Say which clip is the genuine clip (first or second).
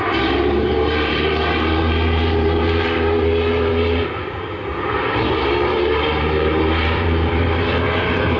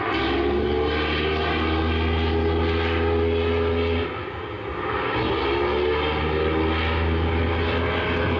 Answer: second